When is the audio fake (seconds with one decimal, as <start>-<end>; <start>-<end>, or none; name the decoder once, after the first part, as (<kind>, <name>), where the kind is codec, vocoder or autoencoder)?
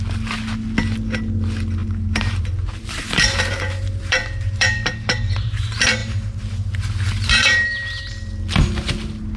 1.8-5.6 (vocoder, BigVGAN v2); 6.0-8.1